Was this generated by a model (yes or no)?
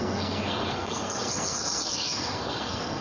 yes